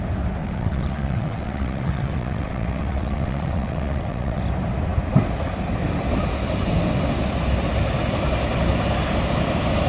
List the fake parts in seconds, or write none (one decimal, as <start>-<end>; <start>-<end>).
0.4-4.4